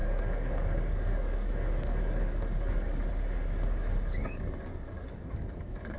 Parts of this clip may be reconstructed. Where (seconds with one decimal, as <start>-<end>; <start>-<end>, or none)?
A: 0.0-6.0